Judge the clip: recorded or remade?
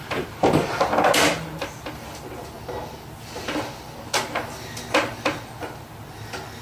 recorded